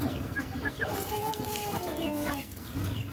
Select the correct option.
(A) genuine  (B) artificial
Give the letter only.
B